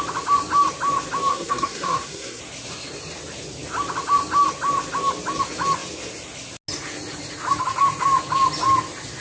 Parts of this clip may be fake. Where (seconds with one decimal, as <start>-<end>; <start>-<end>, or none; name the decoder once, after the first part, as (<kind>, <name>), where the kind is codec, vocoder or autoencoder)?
1.3-2.4 (codec, SNAC)